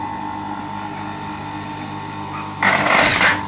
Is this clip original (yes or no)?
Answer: yes